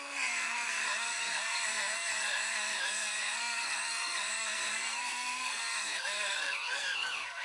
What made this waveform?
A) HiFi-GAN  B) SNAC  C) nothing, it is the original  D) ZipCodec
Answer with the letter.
B